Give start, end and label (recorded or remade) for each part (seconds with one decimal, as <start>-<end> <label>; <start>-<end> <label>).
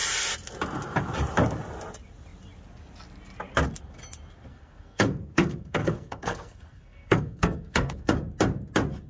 0.0-4.5 recorded; 4.5-8.1 remade; 8.1-9.1 recorded